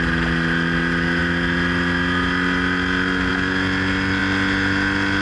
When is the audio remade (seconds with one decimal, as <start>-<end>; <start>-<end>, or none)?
none